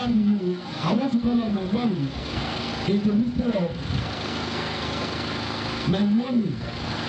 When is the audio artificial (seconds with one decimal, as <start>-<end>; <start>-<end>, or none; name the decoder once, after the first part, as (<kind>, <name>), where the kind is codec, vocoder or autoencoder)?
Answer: 0.0-2.7 (codec, SNAC); 3.4-7.1